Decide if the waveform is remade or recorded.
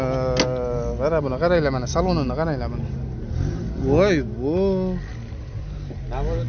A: recorded